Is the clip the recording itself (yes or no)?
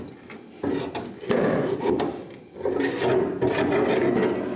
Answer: yes